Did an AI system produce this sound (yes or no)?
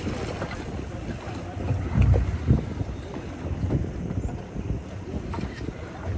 no